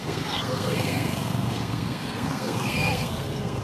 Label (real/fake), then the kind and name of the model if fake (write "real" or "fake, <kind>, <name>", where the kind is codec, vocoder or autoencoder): fake, codec, SNAC